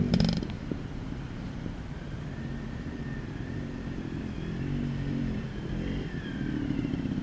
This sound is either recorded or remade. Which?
remade